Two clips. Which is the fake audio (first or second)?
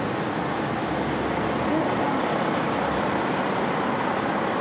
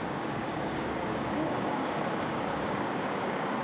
second